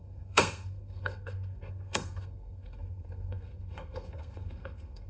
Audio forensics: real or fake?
fake